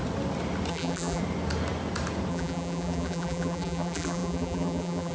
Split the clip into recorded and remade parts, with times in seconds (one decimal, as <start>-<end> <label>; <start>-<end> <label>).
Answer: 0.0-0.7 recorded; 0.7-1.2 remade; 1.2-2.3 recorded; 2.3-5.1 remade